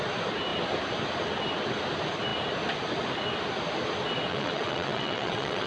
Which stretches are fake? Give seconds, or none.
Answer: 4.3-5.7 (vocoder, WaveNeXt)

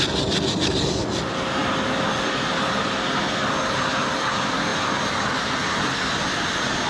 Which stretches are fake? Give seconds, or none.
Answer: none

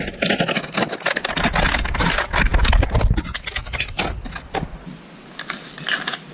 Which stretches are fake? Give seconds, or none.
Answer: none

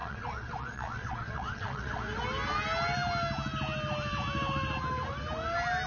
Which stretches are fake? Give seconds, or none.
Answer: 0.0-2.0 (vocoder, WaveNeXt)

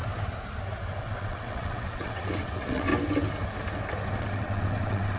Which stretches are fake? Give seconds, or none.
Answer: 1.0-2.9 (vocoder, WaveNeXt); 4.2-5.2

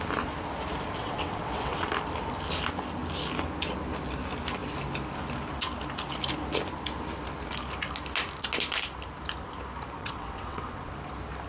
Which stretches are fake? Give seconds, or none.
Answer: 1.0-1.9 (vocoder, WaveNeXt); 10.0-10.9

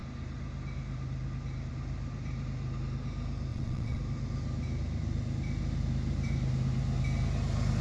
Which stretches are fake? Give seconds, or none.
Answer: 3.5-4.0 (vocoder, WaveNeXt)

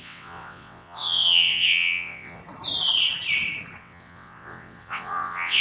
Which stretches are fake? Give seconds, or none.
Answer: 0.0-2.4 (vocoder, WaveNeXt); 3.8-5.6